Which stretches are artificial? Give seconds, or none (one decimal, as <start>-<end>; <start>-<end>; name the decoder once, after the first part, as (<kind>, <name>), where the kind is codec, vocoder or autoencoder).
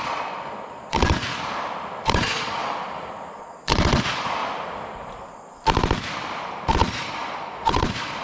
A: 0.0-1.3 (vocoder, Vocos); 2.1-2.6; 3.3-4.4; 6.7-8.2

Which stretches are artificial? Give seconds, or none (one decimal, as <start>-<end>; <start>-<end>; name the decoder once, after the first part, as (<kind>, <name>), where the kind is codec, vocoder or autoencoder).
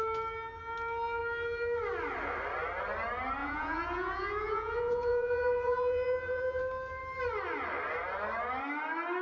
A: 3.4-6.6 (vocoder, Vocos)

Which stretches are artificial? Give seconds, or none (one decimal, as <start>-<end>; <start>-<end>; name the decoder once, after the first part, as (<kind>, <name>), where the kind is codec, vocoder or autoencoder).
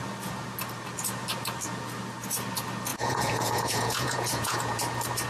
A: 2.9-4.8 (vocoder, Vocos)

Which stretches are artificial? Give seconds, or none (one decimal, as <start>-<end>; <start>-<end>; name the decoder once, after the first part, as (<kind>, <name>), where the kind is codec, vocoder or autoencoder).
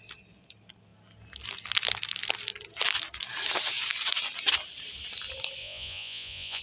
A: 5.6-6.6 (vocoder, Vocos)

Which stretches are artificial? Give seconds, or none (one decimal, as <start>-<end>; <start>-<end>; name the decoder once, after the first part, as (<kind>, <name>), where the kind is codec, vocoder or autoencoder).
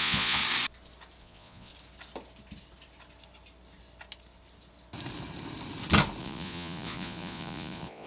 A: 0.0-0.4 (vocoder, Vocos); 1.2-1.7; 6.2-8.1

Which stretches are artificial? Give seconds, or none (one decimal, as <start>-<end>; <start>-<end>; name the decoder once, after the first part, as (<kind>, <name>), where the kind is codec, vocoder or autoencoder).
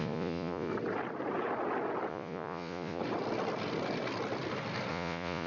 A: 0.0-0.7 (vocoder, Vocos); 2.1-3.0; 4.9-5.5